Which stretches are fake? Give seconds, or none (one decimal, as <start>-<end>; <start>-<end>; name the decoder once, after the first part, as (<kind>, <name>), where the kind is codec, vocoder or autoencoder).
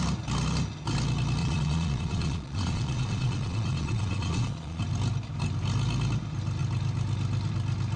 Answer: 1.4-4.8 (vocoder, Vocos)